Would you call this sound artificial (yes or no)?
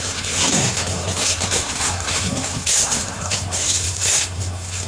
yes